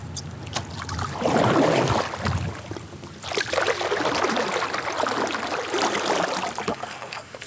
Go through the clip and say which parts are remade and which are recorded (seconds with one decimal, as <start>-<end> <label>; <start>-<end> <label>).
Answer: 0.0-6.7 recorded; 6.7-7.5 remade